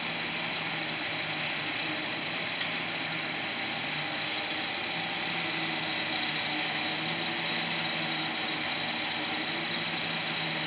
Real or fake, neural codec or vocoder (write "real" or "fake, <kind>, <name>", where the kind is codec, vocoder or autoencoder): real